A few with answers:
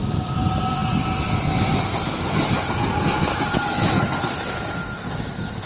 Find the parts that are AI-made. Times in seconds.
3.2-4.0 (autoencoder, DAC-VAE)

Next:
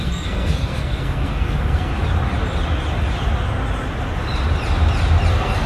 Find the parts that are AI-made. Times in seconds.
0.0-1.9 (codec, SNAC); 5.3-5.7

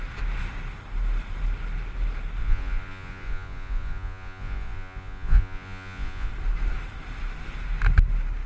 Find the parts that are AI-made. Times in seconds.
2.4-6.3 (vocoder, Vocos)